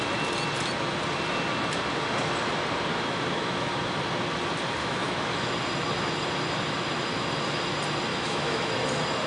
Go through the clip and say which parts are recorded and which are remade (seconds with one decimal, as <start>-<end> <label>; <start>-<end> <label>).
0.0-2.9 recorded; 2.9-3.7 remade; 3.7-4.8 recorded; 4.8-5.5 remade; 5.5-8.1 recorded; 8.1-8.7 remade; 8.7-9.3 recorded